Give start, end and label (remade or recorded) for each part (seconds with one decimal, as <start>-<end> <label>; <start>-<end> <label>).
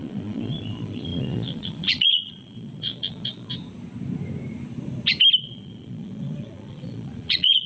0.0-3.5 remade; 3.5-5.4 recorded; 5.4-7.7 remade